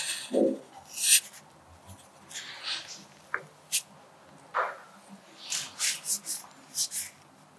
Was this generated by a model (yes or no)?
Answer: no